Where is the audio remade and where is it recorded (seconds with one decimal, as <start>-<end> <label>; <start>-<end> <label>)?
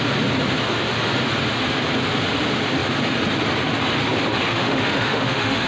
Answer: 0.0-4.5 recorded; 4.5-5.7 remade